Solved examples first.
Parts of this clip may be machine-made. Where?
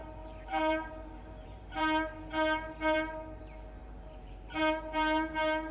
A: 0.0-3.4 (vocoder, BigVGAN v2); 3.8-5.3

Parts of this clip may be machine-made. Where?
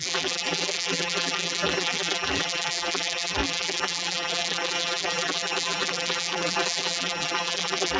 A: 0.0-8.0 (vocoder, BigVGAN v2)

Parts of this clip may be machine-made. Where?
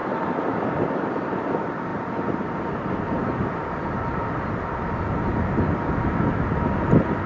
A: 0.0-1.5 (vocoder, BigVGAN v2)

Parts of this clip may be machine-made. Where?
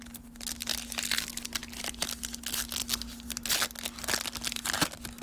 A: none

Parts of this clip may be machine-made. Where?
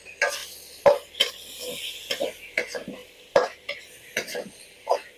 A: 3.0-3.8 (vocoder, BigVGAN v2)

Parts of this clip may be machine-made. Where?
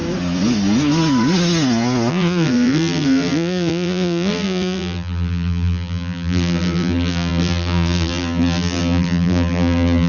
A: 2.1-10.1 (vocoder, BigVGAN v2)